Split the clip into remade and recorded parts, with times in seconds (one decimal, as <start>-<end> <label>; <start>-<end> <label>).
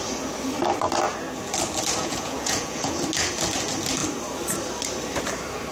0.0-2.0 recorded; 2.0-3.0 remade; 3.0-5.7 recorded